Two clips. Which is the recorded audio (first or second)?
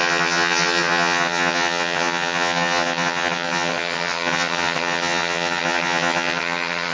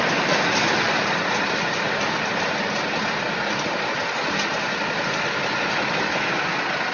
second